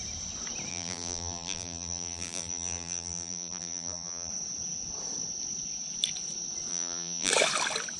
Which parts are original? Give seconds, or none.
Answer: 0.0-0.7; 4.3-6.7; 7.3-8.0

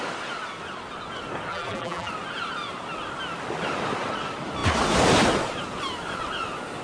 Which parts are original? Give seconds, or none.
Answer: 0.0-1.5; 2.1-6.8

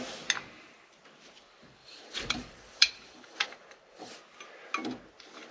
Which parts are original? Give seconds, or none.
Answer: 0.0-1.8; 4.2-5.5

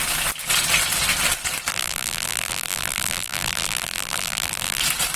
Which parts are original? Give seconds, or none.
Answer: 0.0-1.7; 4.8-5.2

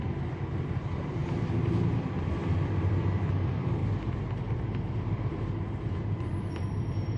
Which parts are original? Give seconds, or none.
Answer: 1.2-2.0; 3.8-4.4

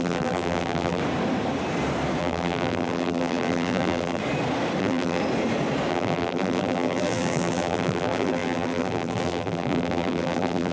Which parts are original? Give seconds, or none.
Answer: 1.0-2.2; 4.2-4.8; 5.2-5.9

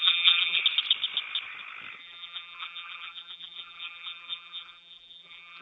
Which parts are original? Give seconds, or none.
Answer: 0.6-2.0

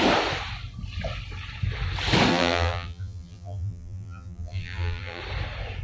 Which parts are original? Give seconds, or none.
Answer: 0.0-2.3; 5.2-5.8